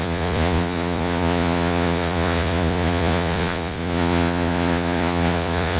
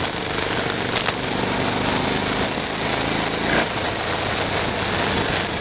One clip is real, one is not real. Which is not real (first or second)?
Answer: first